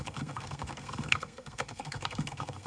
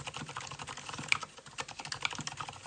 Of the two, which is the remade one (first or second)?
first